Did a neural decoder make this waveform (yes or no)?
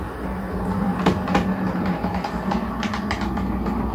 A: no